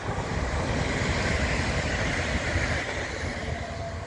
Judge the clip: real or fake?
real